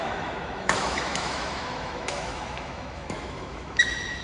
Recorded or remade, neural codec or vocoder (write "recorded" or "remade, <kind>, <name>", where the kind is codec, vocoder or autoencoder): remade, autoencoder, DAC-VAE